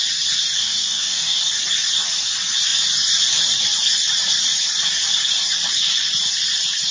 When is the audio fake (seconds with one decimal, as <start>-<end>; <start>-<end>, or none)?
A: 0.6-1.4

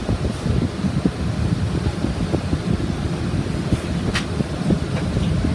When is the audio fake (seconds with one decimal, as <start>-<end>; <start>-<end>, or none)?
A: none

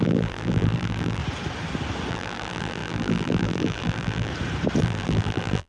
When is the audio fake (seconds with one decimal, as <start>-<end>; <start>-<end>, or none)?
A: 0.0-1.2; 2.1-4.3; 4.8-5.7

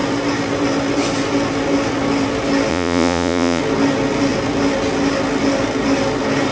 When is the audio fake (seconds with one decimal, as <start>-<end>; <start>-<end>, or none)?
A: 2.7-3.6

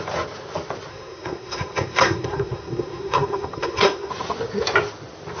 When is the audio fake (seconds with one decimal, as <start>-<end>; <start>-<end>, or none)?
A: 0.9-4.1

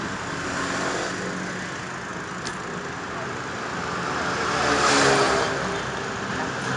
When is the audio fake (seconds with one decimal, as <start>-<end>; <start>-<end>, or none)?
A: none

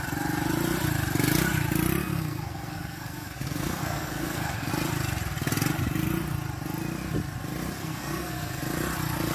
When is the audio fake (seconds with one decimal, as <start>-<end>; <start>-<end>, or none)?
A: 2.0-4.7; 7.8-8.6

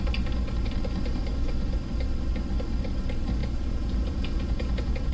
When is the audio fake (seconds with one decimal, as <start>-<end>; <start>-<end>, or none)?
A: 3.4-5.1